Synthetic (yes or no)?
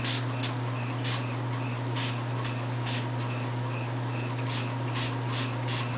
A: no